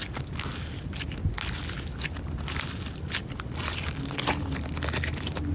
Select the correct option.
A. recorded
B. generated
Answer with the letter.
A